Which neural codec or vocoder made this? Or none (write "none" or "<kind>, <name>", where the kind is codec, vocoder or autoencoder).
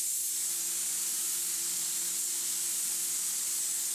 none